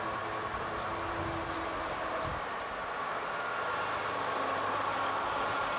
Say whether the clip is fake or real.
real